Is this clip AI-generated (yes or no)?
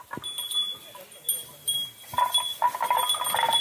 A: no